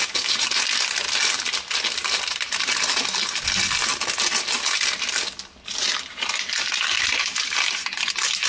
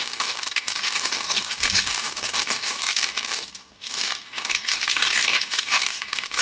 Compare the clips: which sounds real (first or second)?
first